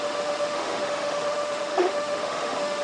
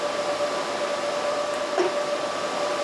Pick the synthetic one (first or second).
first